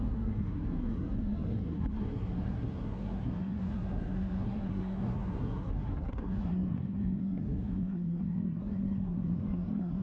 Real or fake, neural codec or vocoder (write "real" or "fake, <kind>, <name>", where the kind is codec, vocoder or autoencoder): fake, codec, SNAC